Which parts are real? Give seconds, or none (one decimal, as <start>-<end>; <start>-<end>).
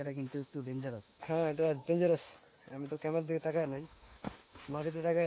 2.3-2.9